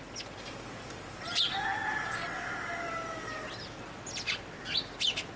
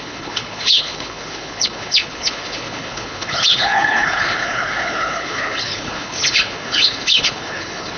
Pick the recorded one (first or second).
first